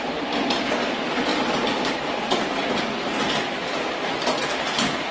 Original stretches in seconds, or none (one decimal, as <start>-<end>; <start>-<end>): 0.0-1.3; 3.3-4.4